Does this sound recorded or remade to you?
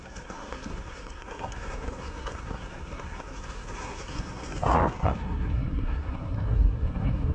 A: remade